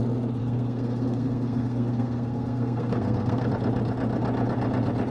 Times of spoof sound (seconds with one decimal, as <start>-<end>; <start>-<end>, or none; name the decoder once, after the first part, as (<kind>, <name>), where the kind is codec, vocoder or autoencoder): 0.4-3.5 (codec, SNAC)